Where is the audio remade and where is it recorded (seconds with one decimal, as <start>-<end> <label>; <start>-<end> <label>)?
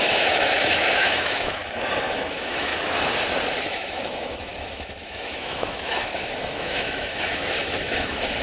0.0-1.6 remade; 1.6-2.3 recorded; 2.3-2.7 remade; 2.7-3.6 recorded; 3.6-8.4 remade